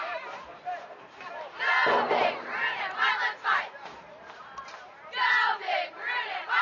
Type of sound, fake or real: fake